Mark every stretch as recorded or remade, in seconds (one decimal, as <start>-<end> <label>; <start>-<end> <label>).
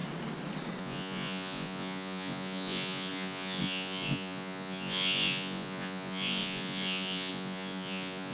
0.0-0.8 recorded; 0.8-8.3 remade